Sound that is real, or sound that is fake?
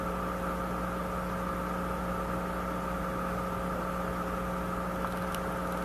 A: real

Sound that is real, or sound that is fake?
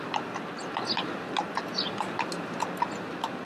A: real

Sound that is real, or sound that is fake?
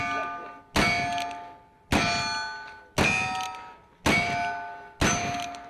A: real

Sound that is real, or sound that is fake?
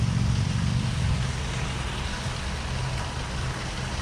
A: real